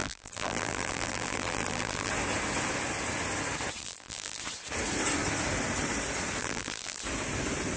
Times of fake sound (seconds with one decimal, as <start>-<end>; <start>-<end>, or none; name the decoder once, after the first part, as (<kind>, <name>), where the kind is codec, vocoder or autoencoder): 0.0-2.1 (vocoder, BigVGAN v2); 3.8-4.4; 6.4-7.0